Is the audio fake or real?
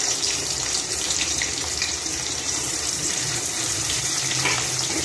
fake